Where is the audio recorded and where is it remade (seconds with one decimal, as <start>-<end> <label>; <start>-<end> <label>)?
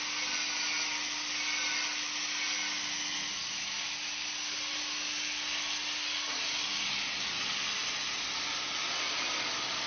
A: 0.0-9.9 recorded